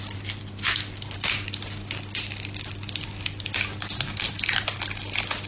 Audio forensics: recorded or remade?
recorded